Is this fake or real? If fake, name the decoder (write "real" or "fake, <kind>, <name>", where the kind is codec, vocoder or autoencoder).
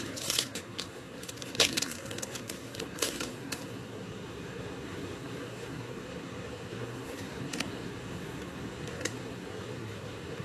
fake, codec, SNAC